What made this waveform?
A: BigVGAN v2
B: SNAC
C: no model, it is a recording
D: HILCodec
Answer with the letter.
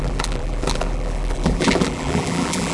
A